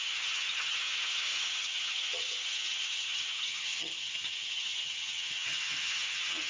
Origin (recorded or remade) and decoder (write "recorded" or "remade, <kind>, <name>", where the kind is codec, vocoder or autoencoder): remade, vocoder, HiFi-GAN